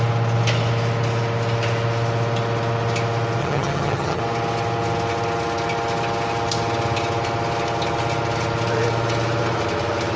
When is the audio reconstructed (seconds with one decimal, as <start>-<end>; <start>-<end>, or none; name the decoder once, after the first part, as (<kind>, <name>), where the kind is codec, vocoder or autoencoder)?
3.4-4.2 (vocoder, HiFi-GAN)

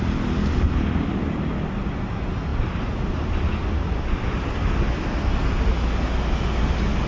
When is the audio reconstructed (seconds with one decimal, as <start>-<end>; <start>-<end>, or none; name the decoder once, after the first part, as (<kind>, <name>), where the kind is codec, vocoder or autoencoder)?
none

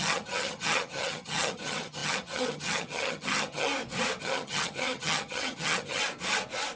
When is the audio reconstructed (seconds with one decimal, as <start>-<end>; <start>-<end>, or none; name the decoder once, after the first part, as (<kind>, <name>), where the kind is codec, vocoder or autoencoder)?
0.0-3.7 (vocoder, HiFi-GAN); 4.2-6.0